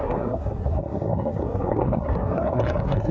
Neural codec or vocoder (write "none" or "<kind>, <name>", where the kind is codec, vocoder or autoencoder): codec, SNAC